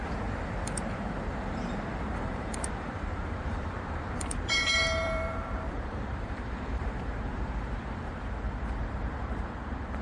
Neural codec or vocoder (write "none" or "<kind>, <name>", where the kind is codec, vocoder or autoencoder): vocoder, BigVGAN v2